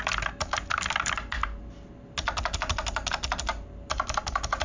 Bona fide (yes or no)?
yes